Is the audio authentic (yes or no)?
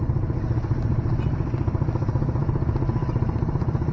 yes